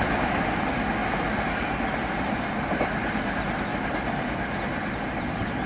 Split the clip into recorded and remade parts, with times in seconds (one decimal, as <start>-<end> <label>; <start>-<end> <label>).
0.0-5.7 recorded